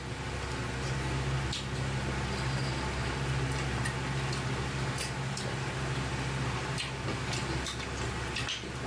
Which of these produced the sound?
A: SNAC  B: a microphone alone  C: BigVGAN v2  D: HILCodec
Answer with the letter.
B